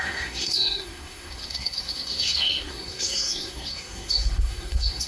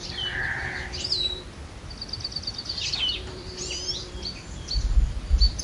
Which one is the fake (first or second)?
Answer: first